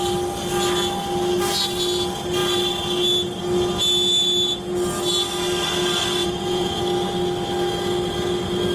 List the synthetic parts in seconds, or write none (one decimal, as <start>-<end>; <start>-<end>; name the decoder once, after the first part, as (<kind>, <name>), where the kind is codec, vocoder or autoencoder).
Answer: 6.2-6.8 (vocoder, Vocos)